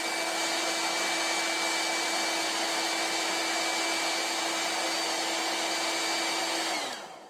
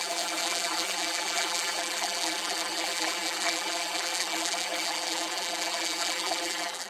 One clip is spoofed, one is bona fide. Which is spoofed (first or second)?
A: second